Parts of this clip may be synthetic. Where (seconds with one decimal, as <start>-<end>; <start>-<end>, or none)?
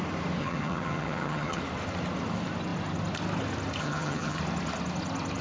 0.4-1.6; 3.8-4.4